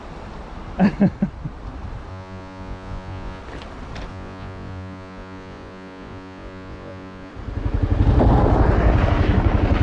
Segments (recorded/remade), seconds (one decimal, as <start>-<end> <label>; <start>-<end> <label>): 0.0-2.1 recorded; 2.1-3.4 remade; 3.4-4.1 recorded; 4.1-7.3 remade; 7.3-9.8 recorded